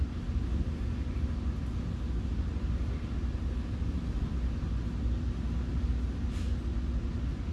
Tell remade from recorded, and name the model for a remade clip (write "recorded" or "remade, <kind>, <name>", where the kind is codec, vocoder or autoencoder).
recorded